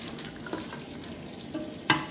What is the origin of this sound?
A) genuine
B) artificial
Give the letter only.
A